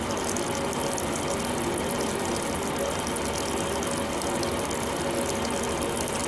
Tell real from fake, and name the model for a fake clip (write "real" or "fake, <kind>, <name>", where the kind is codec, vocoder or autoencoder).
real